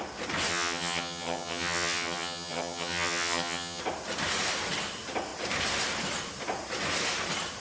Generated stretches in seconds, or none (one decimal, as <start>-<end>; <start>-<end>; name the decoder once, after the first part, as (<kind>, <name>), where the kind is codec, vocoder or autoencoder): 0.5-3.8 (vocoder, HiFi-GAN)